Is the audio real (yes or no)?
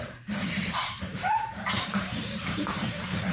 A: no